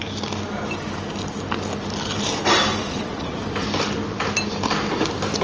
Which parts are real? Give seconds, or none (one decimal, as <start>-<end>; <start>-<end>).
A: 0.0-2.8; 3.4-5.4